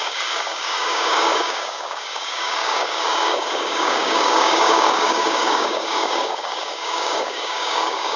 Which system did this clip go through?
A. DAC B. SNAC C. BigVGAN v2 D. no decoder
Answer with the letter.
A